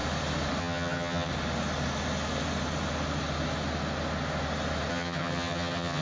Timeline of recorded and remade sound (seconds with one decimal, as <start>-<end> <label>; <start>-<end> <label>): 0.0-0.6 recorded; 0.6-1.3 remade; 1.3-4.9 recorded; 4.9-6.0 remade